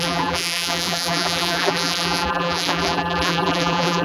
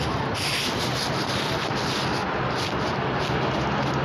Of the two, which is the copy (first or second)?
first